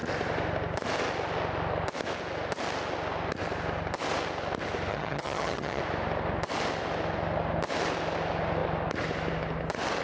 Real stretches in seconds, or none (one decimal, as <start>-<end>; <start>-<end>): 0.0-4.9; 5.8-10.0